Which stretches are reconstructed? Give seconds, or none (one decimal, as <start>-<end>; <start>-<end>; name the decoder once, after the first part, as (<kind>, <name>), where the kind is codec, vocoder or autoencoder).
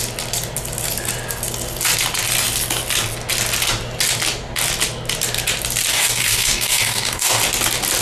5.9-7.4 (codec, DAC)